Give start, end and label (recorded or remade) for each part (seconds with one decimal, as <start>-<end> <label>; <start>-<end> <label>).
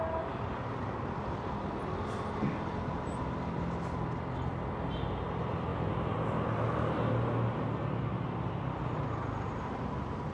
0.0-10.3 recorded